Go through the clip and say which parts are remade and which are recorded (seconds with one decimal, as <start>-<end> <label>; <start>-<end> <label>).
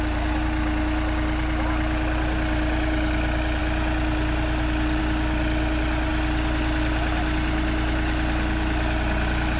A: 0.0-9.6 recorded